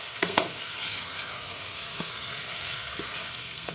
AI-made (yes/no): yes